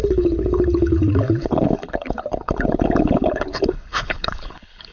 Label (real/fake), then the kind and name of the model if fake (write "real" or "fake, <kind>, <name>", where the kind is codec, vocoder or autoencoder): fake, codec, HILCodec